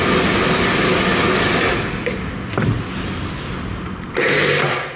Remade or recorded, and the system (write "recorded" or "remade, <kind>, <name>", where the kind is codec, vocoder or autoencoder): recorded